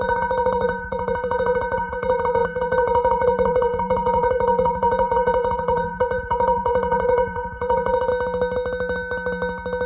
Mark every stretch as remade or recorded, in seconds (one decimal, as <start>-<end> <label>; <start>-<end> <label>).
0.0-8.1 remade; 8.1-9.9 recorded